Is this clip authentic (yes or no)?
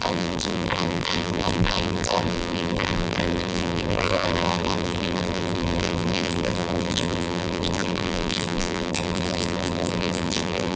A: no